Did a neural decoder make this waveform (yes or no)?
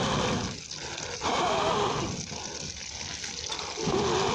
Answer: no